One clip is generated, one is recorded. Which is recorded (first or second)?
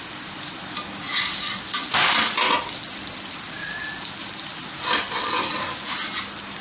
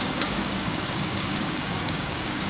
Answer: first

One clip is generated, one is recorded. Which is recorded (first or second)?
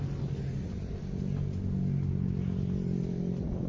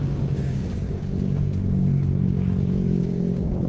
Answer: first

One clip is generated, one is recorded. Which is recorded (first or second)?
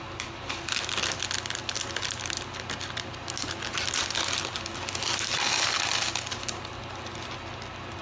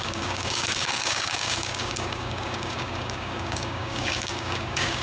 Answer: first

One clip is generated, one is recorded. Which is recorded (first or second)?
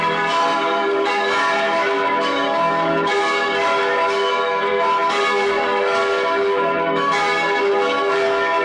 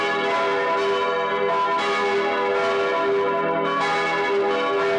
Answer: second